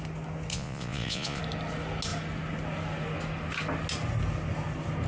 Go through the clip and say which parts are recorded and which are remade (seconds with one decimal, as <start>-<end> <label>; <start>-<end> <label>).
0.0-0.5 recorded; 0.5-1.4 remade; 1.4-5.1 recorded